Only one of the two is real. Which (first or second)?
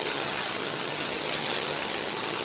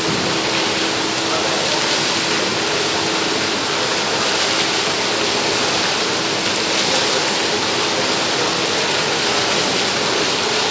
second